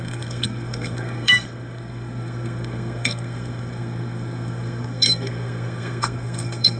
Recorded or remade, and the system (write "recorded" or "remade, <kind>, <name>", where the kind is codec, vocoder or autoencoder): remade, codec, SNAC